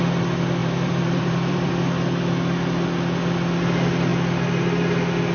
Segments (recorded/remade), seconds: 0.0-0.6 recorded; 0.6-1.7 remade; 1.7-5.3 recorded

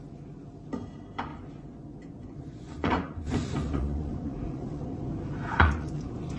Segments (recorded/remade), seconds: 0.0-1.3 recorded; 1.3-5.1 remade; 5.1-5.5 recorded; 5.5-6.4 remade

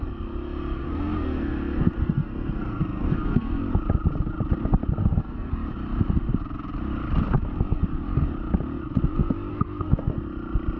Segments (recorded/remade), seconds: 0.0-0.8 recorded; 0.8-3.6 remade; 3.6-5.0 recorded; 5.0-5.5 remade; 5.5-9.5 recorded; 9.5-10.1 remade; 10.1-10.8 recorded

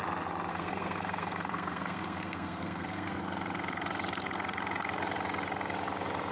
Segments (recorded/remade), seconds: 0.0-0.5 recorded; 0.5-3.2 remade; 3.2-6.3 recorded

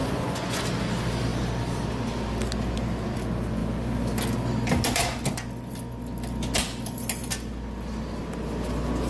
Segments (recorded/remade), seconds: 0.0-0.6 remade; 0.6-9.1 recorded

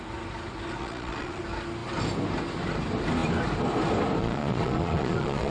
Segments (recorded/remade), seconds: 0.0-0.8 recorded; 0.8-1.4 remade; 1.4-4.2 recorded; 4.2-5.5 remade

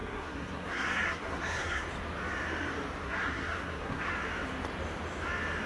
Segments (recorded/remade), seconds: 0.0-1.8 remade; 1.8-3.0 recorded; 3.0-4.1 remade; 4.1-5.7 recorded